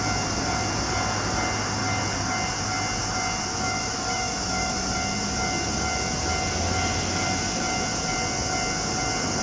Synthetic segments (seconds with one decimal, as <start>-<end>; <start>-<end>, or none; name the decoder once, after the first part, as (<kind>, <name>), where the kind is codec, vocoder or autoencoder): 3.5-4.9 (autoencoder, DAC-VAE)